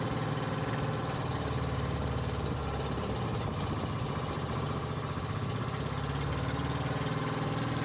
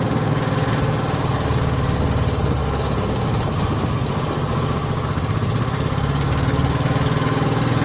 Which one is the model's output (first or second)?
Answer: second